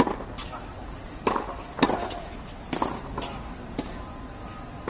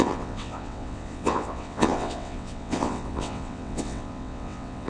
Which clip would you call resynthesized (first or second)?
second